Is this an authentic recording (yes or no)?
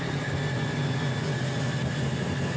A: yes